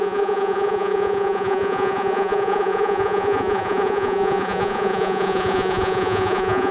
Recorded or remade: remade